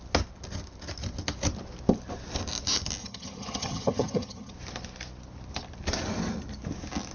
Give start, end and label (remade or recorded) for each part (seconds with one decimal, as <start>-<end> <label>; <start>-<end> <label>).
0.0-3.0 recorded; 3.0-4.5 remade; 4.5-7.1 recorded